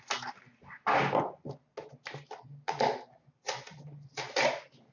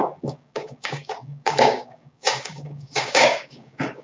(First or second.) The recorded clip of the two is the first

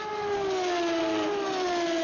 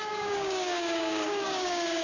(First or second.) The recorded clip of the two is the first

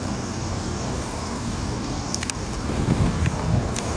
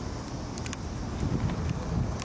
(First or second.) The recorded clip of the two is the second